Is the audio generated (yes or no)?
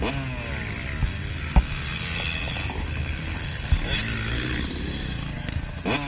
no